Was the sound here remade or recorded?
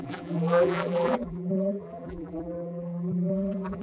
remade